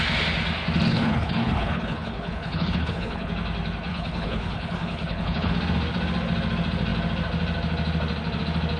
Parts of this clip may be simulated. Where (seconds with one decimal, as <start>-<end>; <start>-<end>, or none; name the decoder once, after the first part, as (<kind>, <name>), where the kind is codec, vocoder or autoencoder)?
0.9-3.3 (codec, HILCodec); 3.9-5.5